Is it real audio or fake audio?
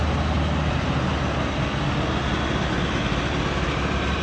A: real